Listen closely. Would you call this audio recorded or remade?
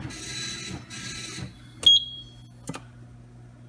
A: recorded